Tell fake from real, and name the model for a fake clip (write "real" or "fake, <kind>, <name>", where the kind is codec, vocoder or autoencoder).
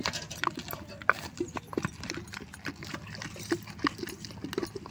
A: real